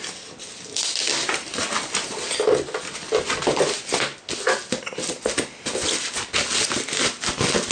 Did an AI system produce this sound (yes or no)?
no